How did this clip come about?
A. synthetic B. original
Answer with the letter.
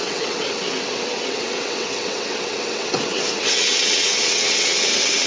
A